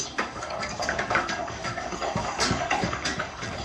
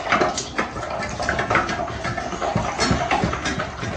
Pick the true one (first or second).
second